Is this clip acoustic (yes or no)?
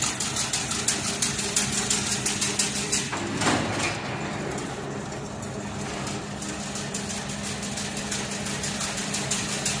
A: yes